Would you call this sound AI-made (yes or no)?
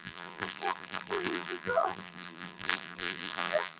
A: yes